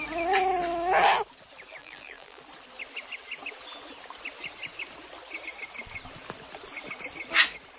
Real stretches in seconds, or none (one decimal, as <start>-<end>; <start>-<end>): 0.0-1.8; 2.4-7.8